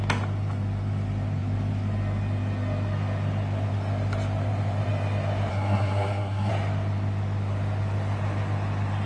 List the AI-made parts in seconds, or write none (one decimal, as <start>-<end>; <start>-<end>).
5.5-6.5